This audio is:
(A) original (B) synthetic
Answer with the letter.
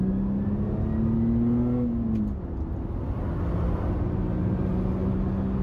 A